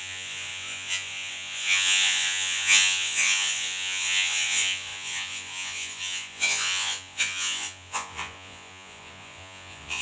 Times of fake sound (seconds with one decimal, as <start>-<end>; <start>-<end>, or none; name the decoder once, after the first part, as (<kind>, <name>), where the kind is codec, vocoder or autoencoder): 0.0-10.0 (vocoder, Vocos)

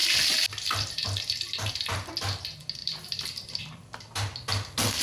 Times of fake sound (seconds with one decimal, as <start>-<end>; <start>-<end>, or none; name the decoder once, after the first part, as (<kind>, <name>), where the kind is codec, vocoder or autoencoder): 2.8-3.6 (vocoder, BigVGAN v2)

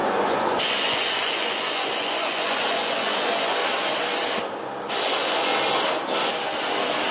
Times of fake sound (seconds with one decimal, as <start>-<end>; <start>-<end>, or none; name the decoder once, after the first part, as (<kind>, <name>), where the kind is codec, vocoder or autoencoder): 0.0-3.6 (vocoder, Vocos); 4.9-5.5